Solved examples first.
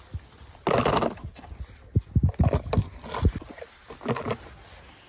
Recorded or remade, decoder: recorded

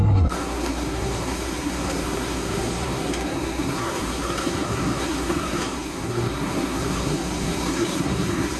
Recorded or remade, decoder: remade, codec, SNAC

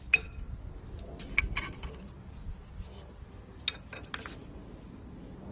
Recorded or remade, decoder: recorded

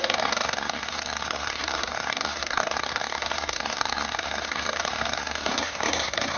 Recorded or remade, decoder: remade, codec, SNAC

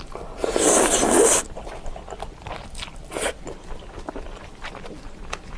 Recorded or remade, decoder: recorded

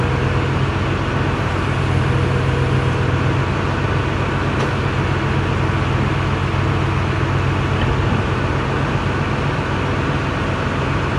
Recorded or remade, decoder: recorded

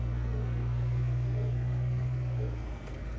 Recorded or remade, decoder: remade, codec, SNAC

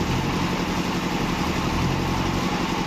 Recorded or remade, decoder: recorded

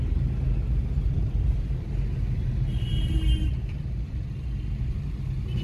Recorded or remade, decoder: recorded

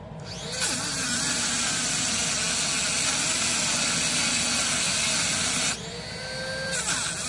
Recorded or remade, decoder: recorded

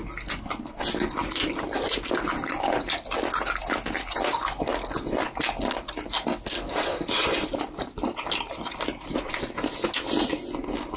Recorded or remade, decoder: recorded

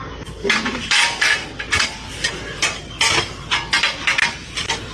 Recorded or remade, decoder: recorded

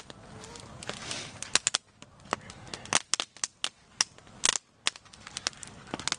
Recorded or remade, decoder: recorded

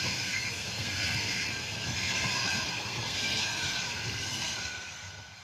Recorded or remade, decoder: remade, codec, SNAC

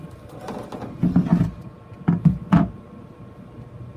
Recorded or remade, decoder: recorded